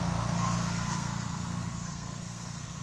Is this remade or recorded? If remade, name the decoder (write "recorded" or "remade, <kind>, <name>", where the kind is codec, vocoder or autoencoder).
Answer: remade, codec, SNAC